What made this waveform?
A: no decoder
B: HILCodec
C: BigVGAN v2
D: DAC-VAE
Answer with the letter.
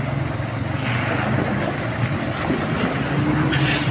A